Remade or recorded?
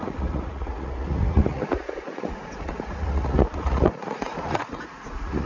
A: remade